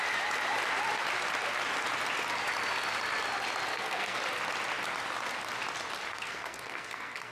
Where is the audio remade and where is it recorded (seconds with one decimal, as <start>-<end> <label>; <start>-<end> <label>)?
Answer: 0.0-3.7 recorded; 3.7-4.2 remade; 4.2-6.1 recorded; 6.1-7.3 remade